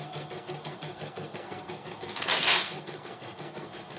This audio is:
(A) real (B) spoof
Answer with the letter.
B